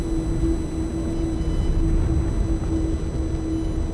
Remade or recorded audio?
recorded